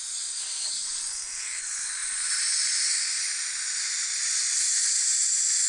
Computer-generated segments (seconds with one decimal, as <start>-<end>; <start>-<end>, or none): 1.1-1.6